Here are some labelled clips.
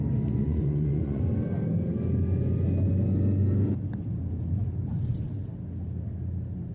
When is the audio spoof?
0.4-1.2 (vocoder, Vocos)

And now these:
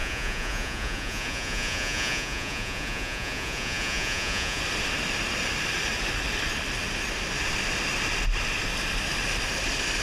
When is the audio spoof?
0.0-4.6 (vocoder, Vocos)

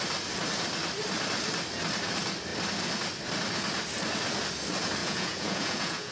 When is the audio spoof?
5.0-6.1 (vocoder, Vocos)

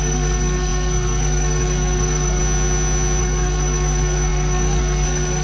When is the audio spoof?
0.0-2.4 (codec, SNAC); 3.2-5.4

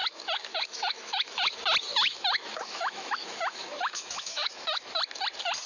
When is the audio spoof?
0.0-1.5 (autoencoder, DAC-VAE); 1.9-5.0

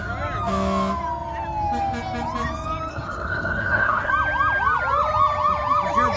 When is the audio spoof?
2.9-4.1 (codec, SNAC)